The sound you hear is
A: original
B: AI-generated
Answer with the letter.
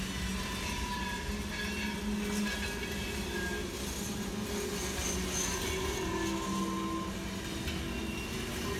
A